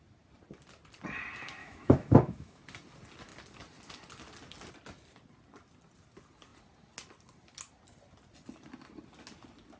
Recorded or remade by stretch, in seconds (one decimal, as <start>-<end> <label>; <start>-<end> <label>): 0.0-1.6 recorded; 1.6-2.6 remade; 2.6-9.8 recorded